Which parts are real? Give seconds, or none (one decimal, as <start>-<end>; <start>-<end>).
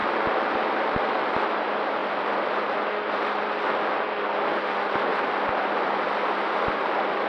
0.0-7.3